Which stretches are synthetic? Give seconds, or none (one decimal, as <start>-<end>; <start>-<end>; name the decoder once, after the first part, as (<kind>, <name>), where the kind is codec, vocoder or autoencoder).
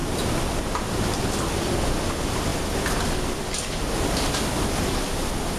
none